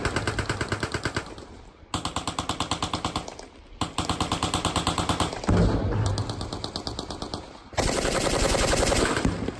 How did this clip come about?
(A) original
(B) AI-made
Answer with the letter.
A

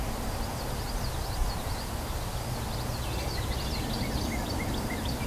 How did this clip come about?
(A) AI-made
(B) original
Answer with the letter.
B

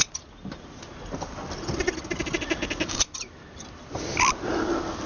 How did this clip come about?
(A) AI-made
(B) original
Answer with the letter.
B